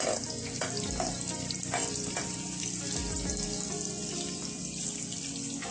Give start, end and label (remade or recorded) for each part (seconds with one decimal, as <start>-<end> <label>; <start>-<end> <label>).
0.0-5.7 recorded